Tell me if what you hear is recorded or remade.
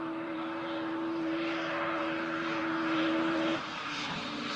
remade